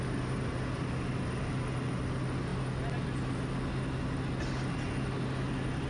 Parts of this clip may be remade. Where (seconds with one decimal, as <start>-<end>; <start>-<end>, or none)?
none